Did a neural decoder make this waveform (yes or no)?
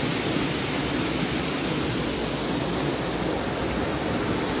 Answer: no